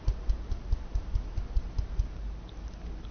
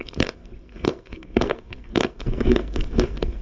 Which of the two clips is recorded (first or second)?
first